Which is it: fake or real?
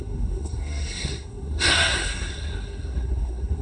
fake